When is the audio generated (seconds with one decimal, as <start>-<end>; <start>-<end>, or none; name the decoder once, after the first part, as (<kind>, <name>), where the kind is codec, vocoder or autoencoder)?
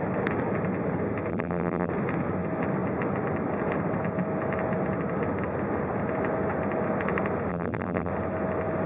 1.3-1.9 (vocoder, BigVGAN v2); 7.5-8.1